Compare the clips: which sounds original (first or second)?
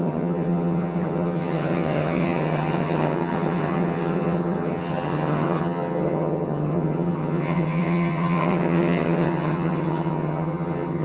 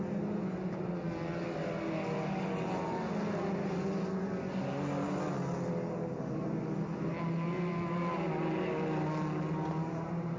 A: second